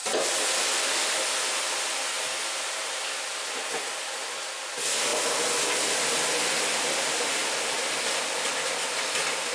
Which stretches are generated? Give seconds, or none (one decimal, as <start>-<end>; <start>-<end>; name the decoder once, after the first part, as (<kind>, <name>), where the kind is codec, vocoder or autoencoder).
none